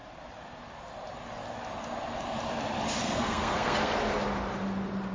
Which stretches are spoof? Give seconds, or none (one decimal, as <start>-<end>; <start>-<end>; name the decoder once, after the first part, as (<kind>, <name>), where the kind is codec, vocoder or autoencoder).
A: 3.0-3.9 (codec, SNAC)